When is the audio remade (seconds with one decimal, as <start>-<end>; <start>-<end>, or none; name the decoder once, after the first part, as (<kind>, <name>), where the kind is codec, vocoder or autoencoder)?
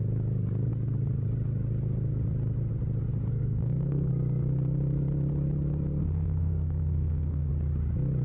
3.3-4.1 (codec, SNAC); 6.0-7.5